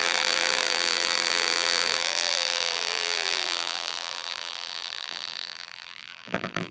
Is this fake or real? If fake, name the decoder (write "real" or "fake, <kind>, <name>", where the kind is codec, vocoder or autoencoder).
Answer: fake, vocoder, BigVGAN v2